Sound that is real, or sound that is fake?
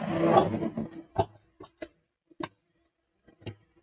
real